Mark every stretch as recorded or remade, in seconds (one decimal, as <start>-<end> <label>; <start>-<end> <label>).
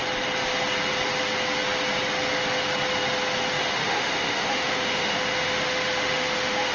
0.0-3.6 recorded; 3.6-6.7 remade